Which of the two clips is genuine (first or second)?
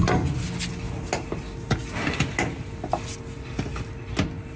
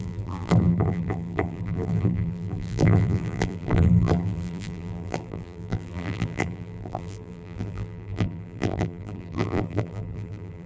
first